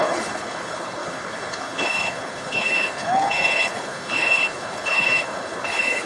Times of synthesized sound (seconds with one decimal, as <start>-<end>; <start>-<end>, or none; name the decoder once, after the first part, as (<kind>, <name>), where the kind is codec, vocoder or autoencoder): 0.0-6.1 (codec, HILCodec)